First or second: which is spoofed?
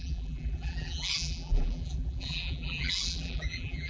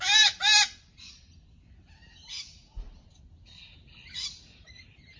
first